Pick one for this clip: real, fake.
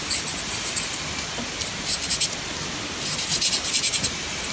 real